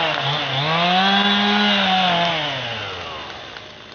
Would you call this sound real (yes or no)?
yes